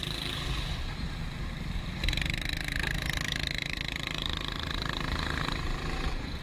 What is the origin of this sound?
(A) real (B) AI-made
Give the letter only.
B